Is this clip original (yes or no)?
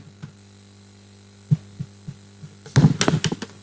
yes